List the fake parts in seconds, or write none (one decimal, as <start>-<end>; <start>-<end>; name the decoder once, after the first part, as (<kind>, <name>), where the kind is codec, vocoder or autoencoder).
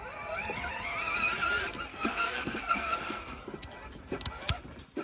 1.9-3.4 (codec, SNAC)